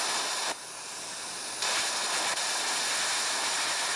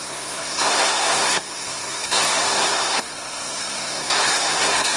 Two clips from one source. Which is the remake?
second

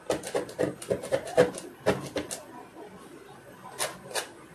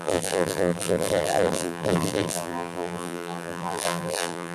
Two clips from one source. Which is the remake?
second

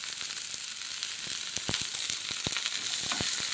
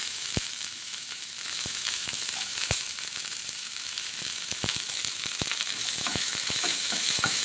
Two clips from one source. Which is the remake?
second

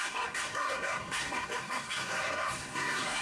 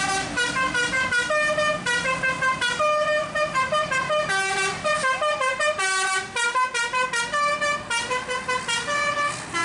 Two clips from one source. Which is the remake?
first